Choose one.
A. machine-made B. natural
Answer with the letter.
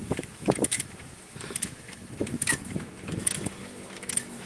A